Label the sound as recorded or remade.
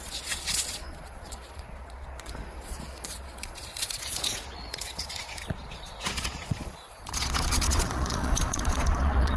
remade